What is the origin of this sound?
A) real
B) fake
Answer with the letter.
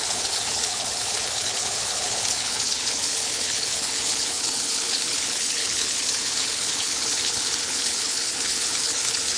B